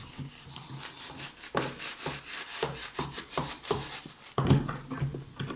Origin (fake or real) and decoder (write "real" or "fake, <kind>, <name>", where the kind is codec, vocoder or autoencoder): real